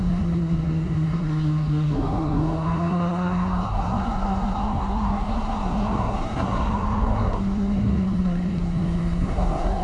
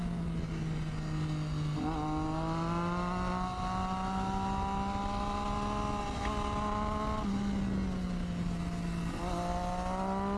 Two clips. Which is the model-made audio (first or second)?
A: first